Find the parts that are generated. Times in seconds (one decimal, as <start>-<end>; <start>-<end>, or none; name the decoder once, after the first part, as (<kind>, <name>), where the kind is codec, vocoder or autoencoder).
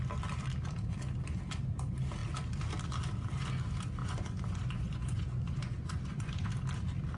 4.0-6.5 (vocoder, Vocos)